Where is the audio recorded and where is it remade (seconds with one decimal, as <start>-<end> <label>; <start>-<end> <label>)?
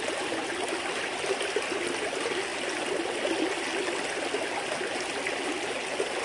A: 0.0-6.2 recorded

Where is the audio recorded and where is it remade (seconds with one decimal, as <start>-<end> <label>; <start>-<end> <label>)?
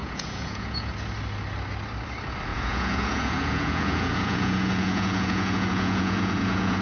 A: 0.0-0.9 remade; 0.9-2.5 recorded; 2.5-6.8 remade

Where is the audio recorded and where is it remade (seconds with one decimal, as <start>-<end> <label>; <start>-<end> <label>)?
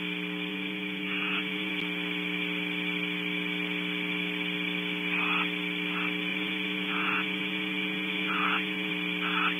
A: 0.0-0.5 recorded; 0.5-1.8 remade; 1.8-6.3 recorded; 6.3-8.9 remade; 8.9-9.6 recorded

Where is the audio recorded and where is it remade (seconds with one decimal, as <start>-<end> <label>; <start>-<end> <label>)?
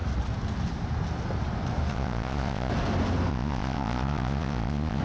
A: 0.0-1.9 recorded; 1.9-2.7 remade; 2.7-3.3 recorded; 3.3-5.0 remade